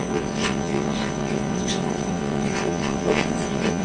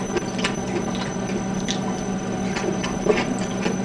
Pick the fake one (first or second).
first